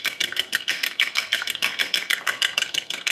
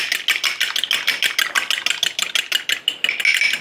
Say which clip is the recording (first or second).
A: second